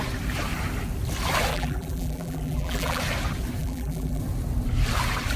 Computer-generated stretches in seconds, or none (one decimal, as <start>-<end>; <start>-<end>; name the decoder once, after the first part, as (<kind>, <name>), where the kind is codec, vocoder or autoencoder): 1.5-3.0 (vocoder, BigVGAN v2); 3.6-4.2